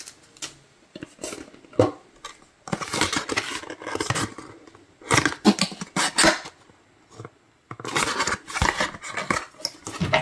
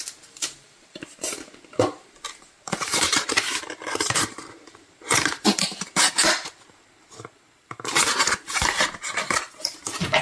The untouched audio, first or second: first